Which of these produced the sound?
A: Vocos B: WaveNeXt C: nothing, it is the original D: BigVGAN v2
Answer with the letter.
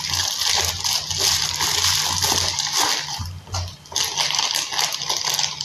C